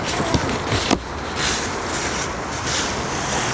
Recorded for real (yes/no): no